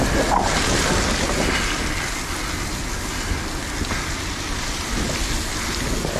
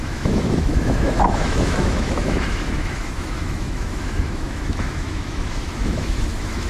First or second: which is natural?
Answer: first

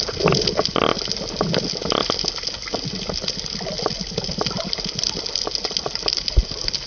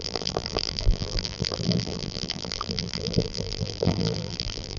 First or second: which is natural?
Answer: first